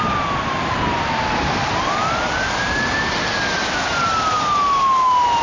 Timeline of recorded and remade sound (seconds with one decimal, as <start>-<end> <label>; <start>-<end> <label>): 0.0-5.4 recorded